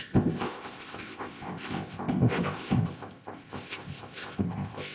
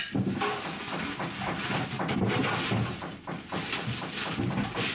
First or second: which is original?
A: second